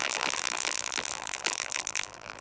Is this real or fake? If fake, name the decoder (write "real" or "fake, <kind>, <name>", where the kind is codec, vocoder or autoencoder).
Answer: fake, vocoder, BigVGAN v2